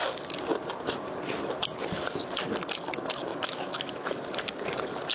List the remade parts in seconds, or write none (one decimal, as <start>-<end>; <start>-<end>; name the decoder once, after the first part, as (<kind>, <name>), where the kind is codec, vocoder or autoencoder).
3.3-4.1 (autoencoder, DAC-VAE)